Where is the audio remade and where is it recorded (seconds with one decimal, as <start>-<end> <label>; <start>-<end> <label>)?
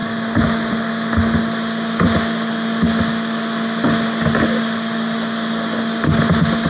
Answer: 0.0-6.7 recorded